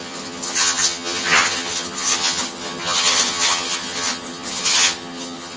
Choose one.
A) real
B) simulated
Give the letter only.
B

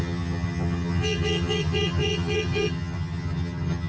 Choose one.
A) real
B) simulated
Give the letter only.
B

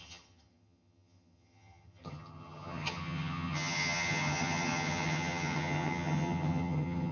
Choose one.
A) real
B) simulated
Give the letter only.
B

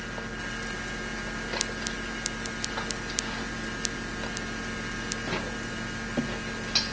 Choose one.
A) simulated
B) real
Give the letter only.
B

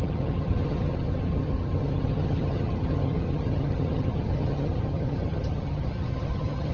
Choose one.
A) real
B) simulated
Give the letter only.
B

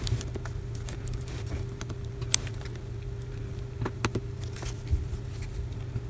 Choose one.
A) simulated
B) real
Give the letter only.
B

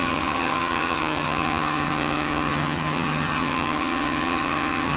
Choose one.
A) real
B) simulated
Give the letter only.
B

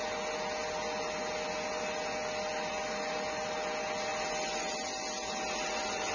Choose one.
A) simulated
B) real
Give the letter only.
B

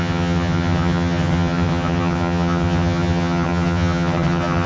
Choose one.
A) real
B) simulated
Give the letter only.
B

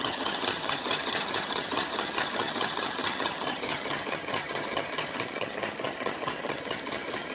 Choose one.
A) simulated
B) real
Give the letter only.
A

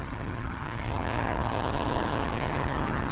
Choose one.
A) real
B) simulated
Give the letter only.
B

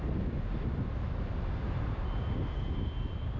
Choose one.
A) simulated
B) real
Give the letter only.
B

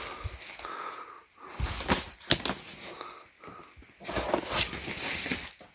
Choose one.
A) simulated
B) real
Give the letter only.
B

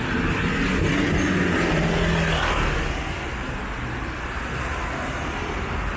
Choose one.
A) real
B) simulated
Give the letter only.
A